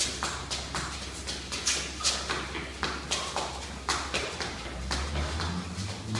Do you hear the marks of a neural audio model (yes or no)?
no